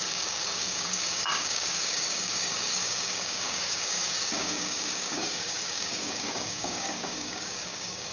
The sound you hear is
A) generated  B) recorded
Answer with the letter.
A